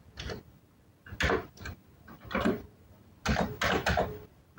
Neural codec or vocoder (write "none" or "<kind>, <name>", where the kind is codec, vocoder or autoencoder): none